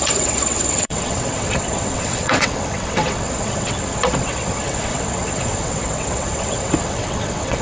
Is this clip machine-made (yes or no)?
yes